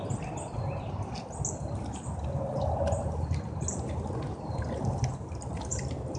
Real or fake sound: real